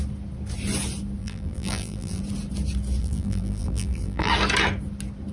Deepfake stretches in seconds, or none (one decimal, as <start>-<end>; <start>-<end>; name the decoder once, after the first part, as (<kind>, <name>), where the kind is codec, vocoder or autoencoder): 1.2-2.2 (vocoder, BigVGAN v2); 3.0-4.3